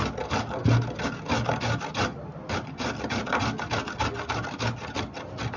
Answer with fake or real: real